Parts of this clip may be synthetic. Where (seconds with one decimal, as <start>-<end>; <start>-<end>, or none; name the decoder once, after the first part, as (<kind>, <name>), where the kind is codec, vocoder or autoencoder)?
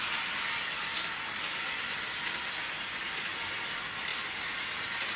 none